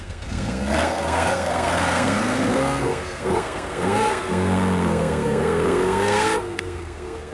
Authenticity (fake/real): fake